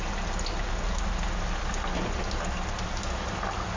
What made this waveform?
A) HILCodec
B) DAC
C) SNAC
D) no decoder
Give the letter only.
D